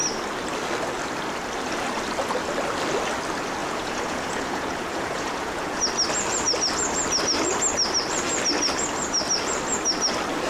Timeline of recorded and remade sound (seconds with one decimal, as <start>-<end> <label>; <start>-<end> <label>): 0.0-3.6 recorded; 3.6-5.8 remade; 5.8-10.5 recorded